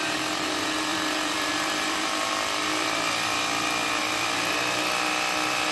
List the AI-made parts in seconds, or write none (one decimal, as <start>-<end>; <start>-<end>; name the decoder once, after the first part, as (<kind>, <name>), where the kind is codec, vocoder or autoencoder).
0.9-3.6 (vocoder, BigVGAN v2); 4.0-4.5